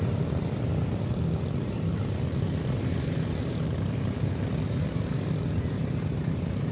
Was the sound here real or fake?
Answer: fake